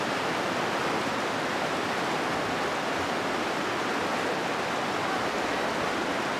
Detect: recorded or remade recorded